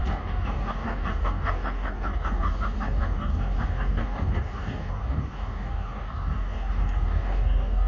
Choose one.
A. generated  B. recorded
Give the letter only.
A